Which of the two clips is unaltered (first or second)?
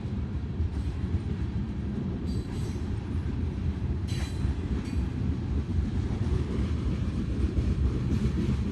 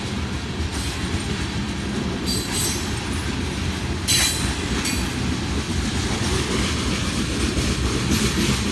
second